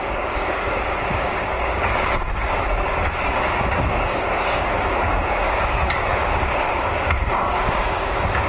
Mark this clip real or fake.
fake